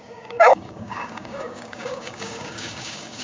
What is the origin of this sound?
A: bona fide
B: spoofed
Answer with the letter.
B